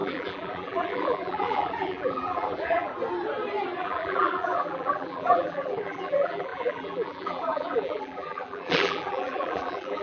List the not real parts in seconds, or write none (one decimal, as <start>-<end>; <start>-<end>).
0.0-2.9; 3.8-10.0